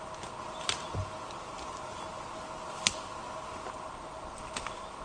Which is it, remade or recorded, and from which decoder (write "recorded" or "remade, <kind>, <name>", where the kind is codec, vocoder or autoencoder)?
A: recorded